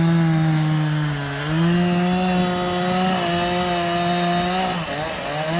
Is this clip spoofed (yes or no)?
no